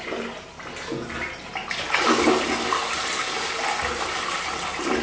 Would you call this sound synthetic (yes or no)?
no